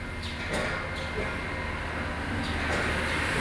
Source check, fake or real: real